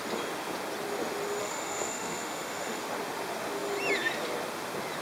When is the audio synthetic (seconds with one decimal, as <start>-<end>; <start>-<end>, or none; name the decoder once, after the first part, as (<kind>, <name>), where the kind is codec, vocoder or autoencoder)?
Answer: 1.4-2.8 (autoencoder, DAC-VAE)